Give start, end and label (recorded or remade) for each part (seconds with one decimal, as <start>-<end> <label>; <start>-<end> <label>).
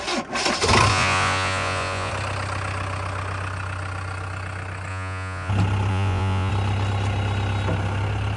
0.0-0.9 recorded; 0.9-2.1 remade; 2.1-4.9 recorded; 4.9-5.5 remade; 5.5-5.9 recorded; 5.9-6.5 remade; 6.5-8.4 recorded